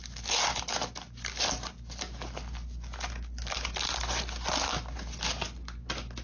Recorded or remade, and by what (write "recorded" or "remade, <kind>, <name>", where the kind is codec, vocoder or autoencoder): recorded